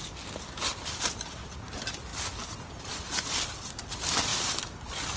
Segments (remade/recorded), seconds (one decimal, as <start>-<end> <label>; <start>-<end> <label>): 0.0-5.2 recorded